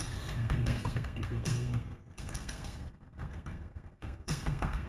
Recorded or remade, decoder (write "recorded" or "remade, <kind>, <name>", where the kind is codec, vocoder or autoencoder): remade, codec, SNAC